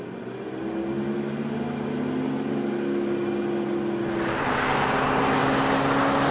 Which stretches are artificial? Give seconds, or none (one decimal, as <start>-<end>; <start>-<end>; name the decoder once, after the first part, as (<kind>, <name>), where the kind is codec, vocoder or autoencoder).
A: none